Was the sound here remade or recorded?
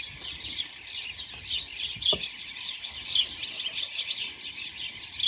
recorded